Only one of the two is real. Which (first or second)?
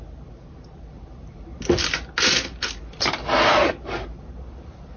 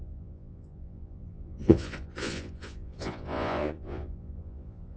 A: first